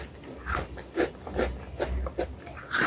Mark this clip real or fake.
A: real